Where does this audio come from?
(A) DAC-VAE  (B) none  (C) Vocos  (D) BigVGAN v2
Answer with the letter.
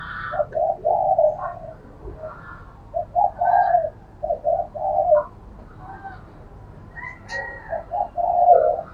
B